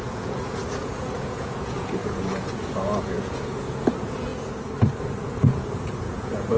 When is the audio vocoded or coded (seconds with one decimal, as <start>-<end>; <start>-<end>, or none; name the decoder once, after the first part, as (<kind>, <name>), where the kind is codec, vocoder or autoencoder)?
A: 0.0-4.3 (vocoder, Vocos); 5.0-6.6